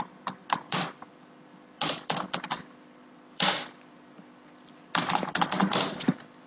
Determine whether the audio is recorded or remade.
remade